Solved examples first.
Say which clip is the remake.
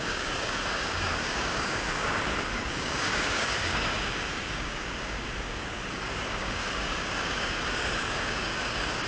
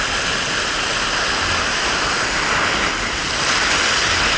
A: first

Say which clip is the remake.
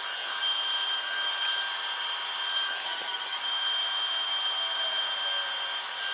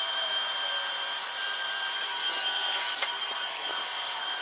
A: second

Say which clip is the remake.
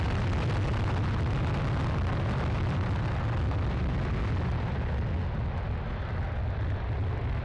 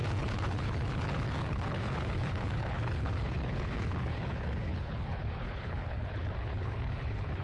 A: second